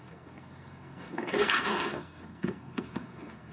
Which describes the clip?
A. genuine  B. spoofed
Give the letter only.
B